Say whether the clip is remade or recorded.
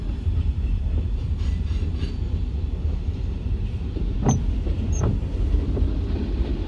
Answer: remade